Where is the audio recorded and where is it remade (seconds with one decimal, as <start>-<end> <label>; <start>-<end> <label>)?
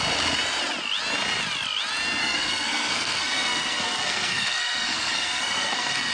0.0-2.2 recorded; 2.2-6.1 remade